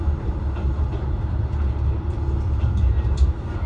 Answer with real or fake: real